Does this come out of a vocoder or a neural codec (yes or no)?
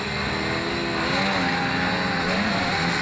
no